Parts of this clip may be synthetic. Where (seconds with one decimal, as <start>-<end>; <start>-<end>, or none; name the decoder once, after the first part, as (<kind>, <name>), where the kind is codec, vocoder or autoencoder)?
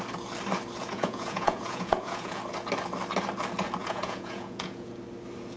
0.8-2.4 (vocoder, Vocos); 3.8-4.9